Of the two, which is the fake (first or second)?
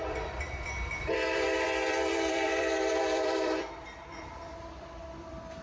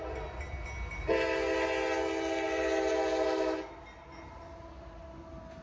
first